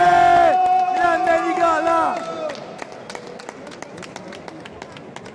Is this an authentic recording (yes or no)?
yes